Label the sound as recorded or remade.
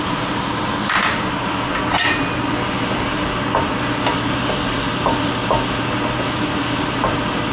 recorded